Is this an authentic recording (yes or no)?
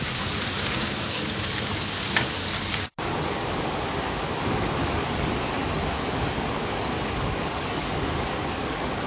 no